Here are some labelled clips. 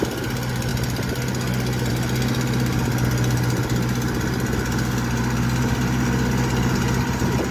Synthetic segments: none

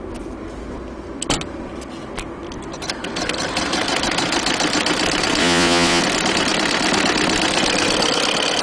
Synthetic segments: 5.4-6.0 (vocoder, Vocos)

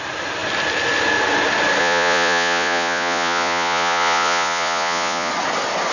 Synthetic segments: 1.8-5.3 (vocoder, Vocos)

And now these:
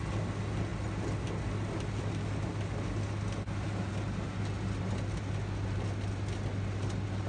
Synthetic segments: none